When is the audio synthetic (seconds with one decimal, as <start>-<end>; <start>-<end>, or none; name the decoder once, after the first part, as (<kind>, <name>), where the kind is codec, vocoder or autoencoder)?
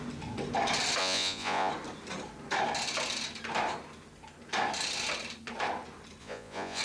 1.0-1.7 (vocoder, Vocos); 6.2-6.8